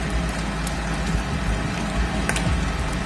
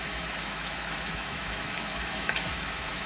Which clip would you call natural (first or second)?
first